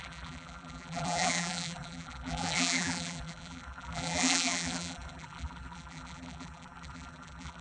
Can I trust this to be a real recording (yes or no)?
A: no